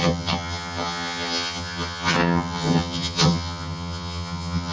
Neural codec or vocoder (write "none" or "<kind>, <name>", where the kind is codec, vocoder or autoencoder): vocoder, HiFi-GAN